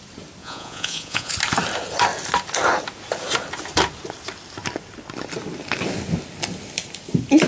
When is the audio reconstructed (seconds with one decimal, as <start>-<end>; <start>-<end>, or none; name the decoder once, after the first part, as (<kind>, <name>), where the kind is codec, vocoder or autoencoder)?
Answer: 0.4-1.3 (vocoder, Vocos)